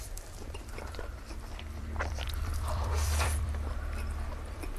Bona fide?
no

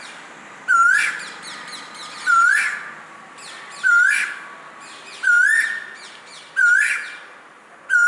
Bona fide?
yes